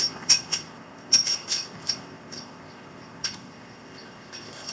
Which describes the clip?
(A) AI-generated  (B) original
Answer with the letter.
A